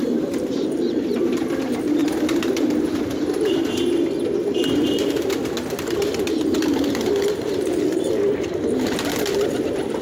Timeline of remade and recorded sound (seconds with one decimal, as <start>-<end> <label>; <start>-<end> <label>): 0.0-10.0 remade